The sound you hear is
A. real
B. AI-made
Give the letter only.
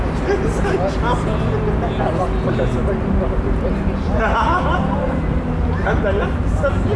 A